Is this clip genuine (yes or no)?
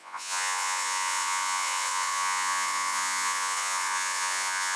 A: no